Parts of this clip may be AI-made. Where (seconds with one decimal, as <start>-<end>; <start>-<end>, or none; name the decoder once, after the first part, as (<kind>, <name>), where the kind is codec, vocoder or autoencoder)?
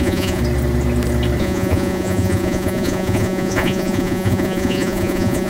0.0-0.4 (vocoder, Vocos); 1.4-5.5